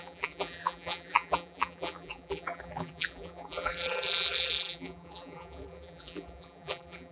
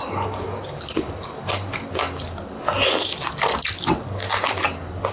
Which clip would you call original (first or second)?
second